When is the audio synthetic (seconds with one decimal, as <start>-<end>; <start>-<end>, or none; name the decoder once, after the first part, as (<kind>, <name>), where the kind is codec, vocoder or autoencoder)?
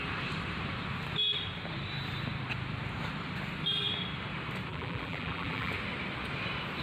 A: 4.7-5.7 (vocoder, BigVGAN v2)